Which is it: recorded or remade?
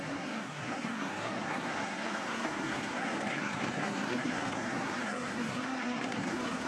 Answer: remade